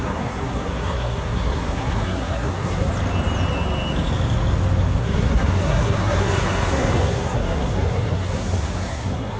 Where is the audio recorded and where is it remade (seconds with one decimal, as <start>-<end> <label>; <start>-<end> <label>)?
0.0-2.9 remade; 2.9-5.0 recorded; 5.0-9.4 remade